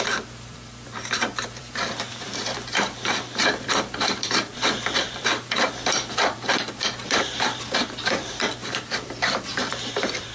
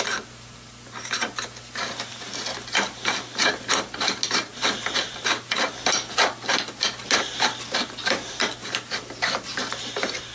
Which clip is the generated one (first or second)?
first